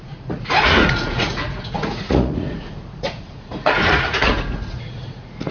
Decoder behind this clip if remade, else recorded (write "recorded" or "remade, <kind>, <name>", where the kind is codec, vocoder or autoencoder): remade, vocoder, Vocos